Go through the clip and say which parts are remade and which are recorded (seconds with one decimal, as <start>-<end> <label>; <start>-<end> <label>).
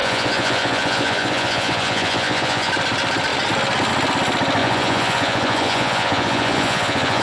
0.0-2.7 remade; 2.7-4.6 recorded; 4.6-7.2 remade